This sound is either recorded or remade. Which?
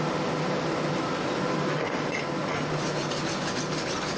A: recorded